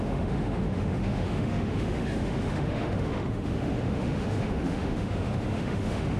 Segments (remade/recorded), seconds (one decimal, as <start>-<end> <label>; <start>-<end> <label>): 0.0-6.2 remade